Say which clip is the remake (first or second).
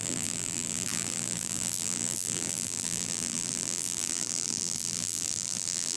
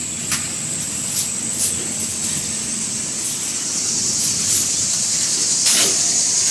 first